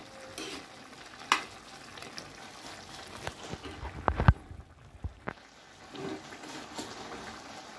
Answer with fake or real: real